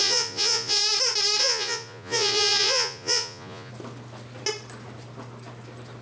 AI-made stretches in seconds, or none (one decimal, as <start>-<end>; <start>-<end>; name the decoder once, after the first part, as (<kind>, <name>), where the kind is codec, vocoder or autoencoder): 0.0-0.8 (vocoder, Vocos); 1.4-3.7